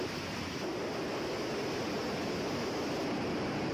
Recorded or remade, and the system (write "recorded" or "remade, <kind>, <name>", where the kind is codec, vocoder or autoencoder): recorded